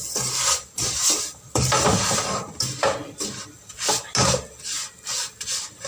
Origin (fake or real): real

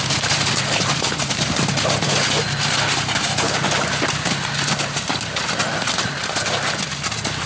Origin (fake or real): fake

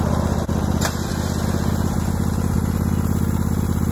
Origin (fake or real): real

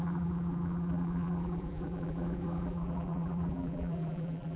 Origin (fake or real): fake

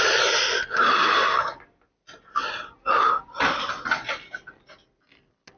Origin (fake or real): real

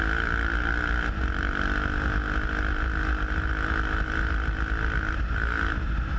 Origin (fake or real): real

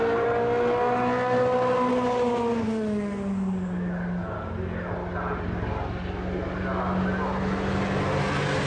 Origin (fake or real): real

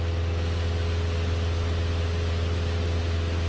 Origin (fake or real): real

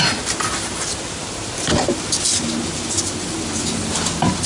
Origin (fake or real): real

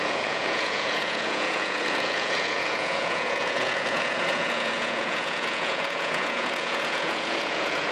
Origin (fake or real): fake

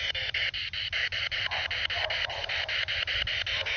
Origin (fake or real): real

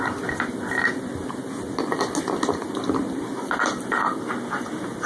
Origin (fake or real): real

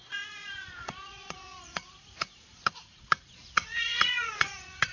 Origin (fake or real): fake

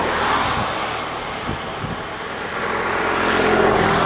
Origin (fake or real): real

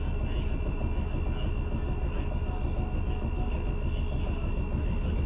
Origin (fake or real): real